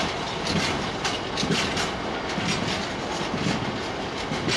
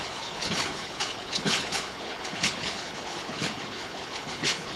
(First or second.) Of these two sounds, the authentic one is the first